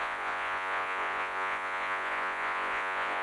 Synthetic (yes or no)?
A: yes